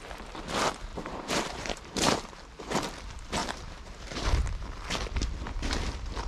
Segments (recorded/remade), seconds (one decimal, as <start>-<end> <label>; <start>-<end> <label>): 0.0-0.9 recorded; 0.9-2.4 remade; 2.4-3.4 recorded; 3.4-4.5 remade; 4.5-6.3 recorded